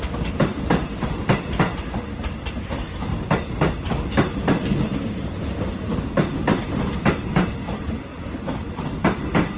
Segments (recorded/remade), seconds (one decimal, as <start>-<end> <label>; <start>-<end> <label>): 0.0-1.7 recorded; 1.7-2.3 remade; 2.3-4.9 recorded; 4.9-6.9 remade; 6.9-9.6 recorded